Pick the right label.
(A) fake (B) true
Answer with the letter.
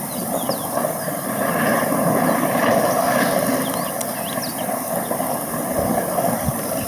B